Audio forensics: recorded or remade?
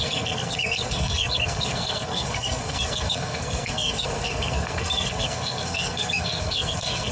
remade